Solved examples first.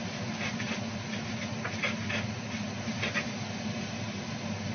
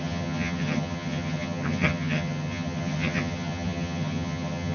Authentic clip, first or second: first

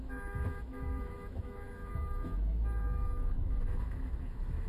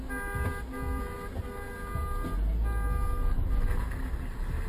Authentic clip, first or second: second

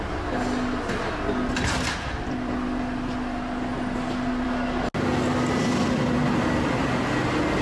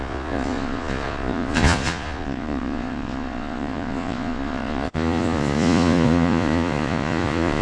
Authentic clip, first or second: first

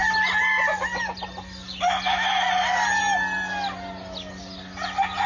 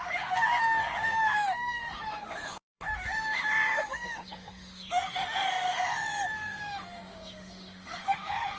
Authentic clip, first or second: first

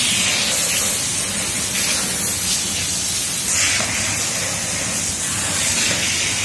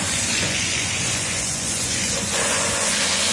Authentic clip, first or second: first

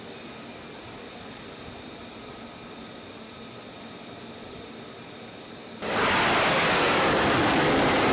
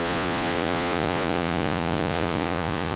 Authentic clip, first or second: first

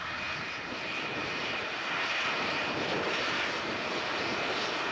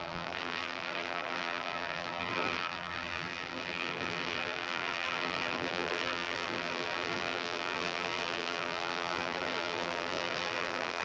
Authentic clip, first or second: first